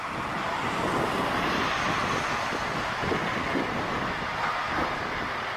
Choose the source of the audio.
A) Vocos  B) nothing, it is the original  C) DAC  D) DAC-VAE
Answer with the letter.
B